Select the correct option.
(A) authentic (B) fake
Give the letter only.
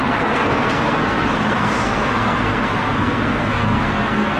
B